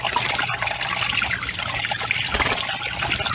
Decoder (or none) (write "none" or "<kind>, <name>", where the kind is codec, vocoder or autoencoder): vocoder, BigVGAN v2